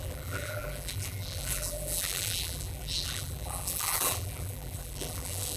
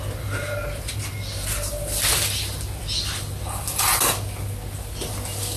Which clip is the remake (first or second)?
first